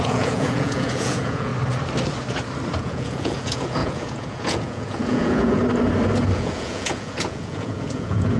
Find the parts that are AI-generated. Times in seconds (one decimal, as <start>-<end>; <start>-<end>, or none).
0.0-1.5; 2.8-5.6; 6.3-8.4

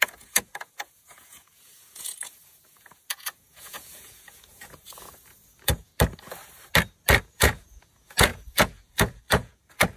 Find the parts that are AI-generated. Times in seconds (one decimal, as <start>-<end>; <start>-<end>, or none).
0.0-5.9; 7.2-10.0

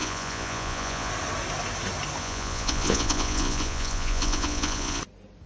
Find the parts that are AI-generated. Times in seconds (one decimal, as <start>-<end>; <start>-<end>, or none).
0.0-1.1; 2.2-5.0